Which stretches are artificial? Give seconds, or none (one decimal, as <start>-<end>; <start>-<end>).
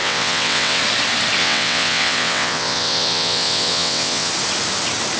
0.0-0.8; 1.4-4.3